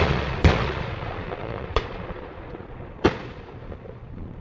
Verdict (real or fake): fake